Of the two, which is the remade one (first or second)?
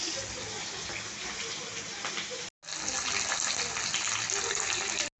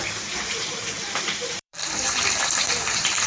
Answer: second